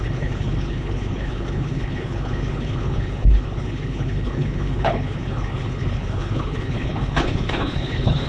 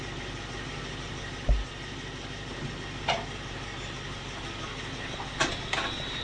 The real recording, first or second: second